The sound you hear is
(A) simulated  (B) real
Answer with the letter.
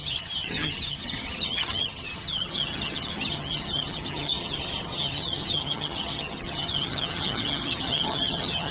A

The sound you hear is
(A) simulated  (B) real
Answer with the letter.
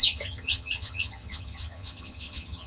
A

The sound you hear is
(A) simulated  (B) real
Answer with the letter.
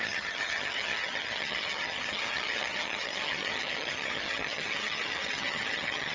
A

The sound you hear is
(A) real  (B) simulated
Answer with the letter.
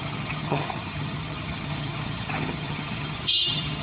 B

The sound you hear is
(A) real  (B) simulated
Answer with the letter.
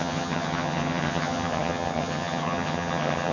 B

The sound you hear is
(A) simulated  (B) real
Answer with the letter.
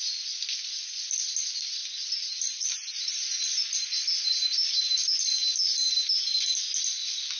B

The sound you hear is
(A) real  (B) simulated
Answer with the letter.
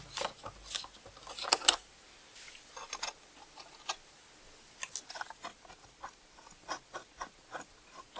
A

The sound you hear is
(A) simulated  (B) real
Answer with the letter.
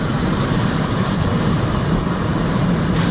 B